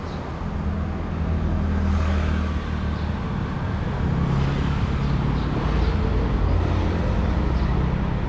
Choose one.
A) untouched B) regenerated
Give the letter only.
A